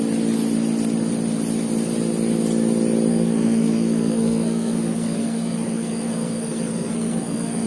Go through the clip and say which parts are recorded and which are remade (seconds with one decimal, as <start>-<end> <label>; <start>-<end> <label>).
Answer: 0.0-3.1 recorded; 3.1-7.7 remade